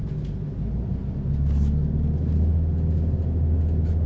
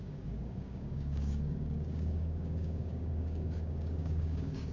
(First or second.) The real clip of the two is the first